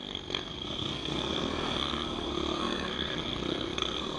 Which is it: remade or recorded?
remade